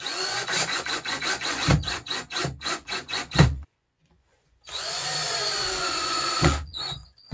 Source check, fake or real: fake